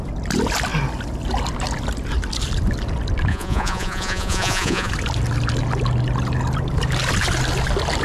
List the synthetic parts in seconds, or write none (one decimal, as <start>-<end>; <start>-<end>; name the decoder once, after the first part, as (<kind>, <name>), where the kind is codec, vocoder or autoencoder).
3.3-4.9 (vocoder, Vocos)